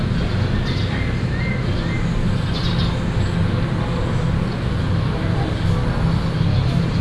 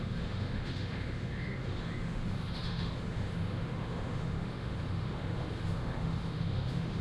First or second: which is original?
first